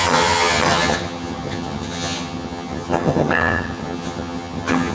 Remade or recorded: remade